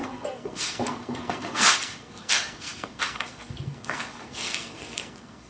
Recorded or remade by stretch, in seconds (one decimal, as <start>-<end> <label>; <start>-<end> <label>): 0.0-5.5 remade